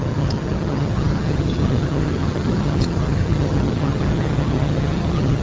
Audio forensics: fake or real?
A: fake